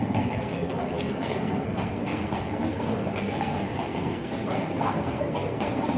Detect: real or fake fake